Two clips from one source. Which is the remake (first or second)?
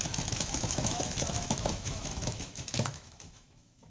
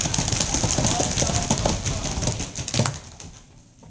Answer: first